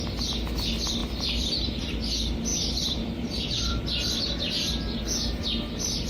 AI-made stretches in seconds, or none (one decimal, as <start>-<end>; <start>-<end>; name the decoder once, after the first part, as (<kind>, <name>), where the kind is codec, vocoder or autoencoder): 1.0-1.8 (vocoder, BigVGAN v2); 2.5-3.8